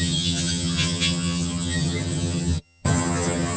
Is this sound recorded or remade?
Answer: remade